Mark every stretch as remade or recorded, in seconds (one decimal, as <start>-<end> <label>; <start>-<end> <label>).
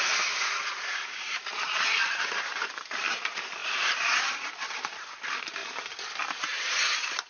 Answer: 0.0-3.6 remade; 3.6-4.2 recorded; 4.2-5.6 remade; 5.6-6.4 recorded; 6.4-7.3 remade